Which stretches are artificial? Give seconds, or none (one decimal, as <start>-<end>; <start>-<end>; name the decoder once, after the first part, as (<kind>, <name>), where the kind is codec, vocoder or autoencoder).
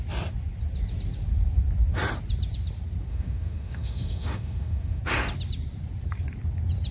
3.1-5.0 (autoencoder, DAC-VAE)